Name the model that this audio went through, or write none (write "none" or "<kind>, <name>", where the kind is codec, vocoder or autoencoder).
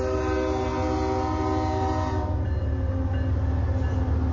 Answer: none